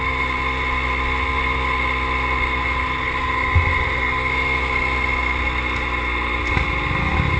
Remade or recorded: recorded